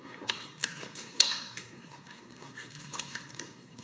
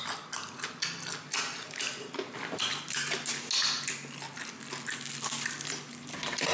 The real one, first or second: second